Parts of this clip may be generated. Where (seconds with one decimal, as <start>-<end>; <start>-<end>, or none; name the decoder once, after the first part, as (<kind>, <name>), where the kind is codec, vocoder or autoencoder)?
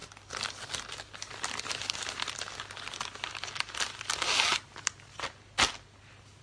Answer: none